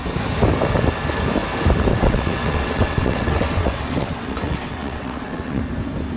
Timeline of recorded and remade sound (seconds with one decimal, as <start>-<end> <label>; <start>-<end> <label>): 0.0-1.9 recorded; 1.9-5.6 remade; 5.6-6.2 recorded